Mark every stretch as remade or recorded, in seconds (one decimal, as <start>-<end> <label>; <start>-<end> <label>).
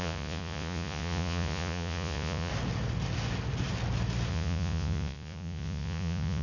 0.0-2.5 remade; 2.5-4.3 recorded; 4.3-6.4 remade